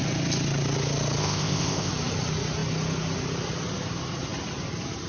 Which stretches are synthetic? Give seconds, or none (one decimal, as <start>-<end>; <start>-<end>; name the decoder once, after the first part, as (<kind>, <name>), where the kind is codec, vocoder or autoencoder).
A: 1.2-1.9 (codec, ZipCodec)